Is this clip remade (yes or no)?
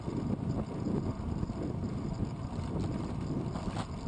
no